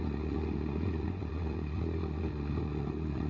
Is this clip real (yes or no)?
no